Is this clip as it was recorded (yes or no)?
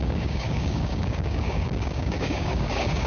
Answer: no